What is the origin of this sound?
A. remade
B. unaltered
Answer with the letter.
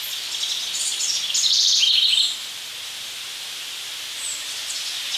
B